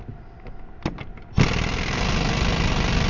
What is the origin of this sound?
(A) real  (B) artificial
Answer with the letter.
A